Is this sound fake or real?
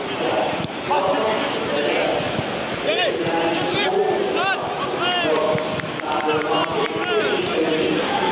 real